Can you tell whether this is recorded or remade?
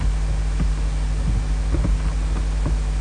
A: recorded